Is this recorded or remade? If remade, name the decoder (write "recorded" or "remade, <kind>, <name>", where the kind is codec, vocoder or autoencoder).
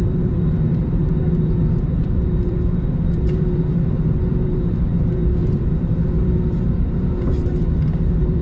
remade, vocoder, BigVGAN v2